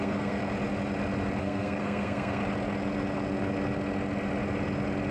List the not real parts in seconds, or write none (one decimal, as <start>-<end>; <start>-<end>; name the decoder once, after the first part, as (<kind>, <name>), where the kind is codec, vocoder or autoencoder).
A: 0.0-0.4 (codec, SNAC); 1.4-2.4